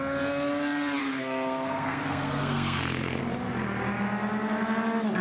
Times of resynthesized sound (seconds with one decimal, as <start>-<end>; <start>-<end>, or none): 1.0-3.2